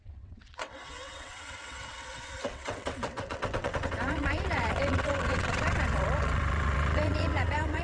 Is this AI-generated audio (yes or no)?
yes